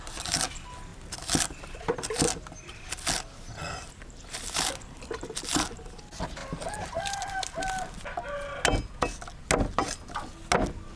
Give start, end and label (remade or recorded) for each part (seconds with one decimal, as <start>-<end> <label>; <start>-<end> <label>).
0.0-11.0 recorded